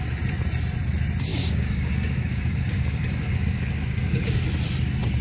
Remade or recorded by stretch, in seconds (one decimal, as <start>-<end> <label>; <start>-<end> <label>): 0.0-1.3 recorded; 1.3-4.4 remade; 4.4-5.2 recorded